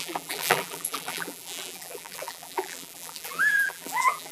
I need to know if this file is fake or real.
fake